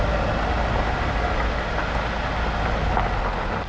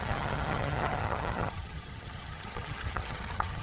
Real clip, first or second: first